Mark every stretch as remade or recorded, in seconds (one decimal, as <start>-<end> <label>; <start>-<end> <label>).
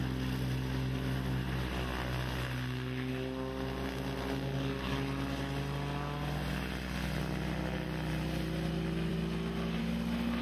0.0-10.4 recorded